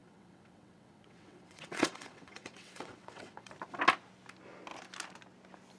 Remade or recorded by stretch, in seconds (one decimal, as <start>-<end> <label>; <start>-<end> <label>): 0.0-3.5 remade; 3.5-5.8 recorded